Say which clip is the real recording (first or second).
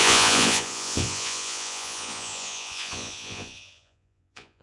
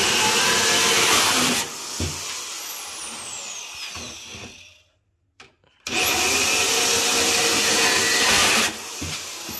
second